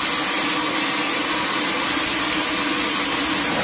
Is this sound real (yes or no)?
yes